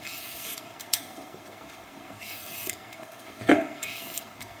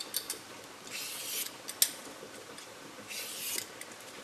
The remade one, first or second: first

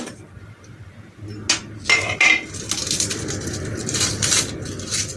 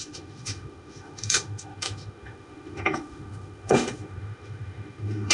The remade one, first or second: second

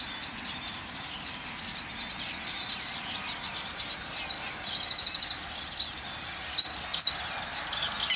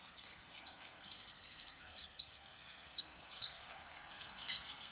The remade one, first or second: second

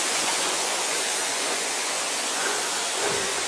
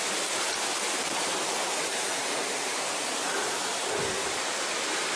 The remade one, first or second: first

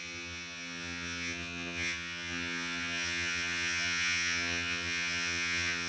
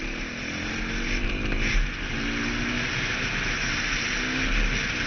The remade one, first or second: first